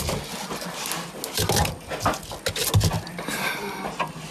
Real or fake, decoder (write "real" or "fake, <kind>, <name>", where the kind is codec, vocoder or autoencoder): real